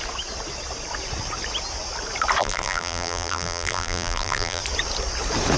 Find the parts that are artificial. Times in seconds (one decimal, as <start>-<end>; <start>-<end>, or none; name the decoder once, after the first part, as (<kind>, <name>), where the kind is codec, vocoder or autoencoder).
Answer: 2.4-4.6 (vocoder, BigVGAN v2)